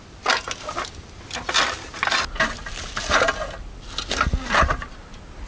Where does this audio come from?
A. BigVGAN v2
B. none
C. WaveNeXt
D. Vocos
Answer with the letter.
B